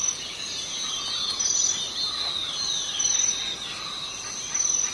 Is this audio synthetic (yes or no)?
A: no